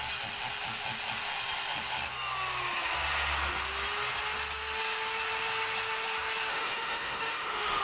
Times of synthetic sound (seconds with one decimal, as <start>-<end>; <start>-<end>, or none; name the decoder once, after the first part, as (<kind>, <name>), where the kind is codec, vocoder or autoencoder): 6.5-7.8 (autoencoder, DAC-VAE)